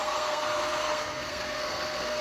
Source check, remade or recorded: remade